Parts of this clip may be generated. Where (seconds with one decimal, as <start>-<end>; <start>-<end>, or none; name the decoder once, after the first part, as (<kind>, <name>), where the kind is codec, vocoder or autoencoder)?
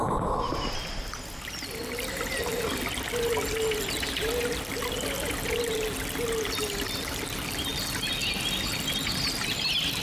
none